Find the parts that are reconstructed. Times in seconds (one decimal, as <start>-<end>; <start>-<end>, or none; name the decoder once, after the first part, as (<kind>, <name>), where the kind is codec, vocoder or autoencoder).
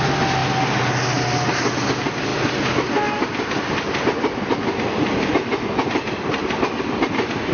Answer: none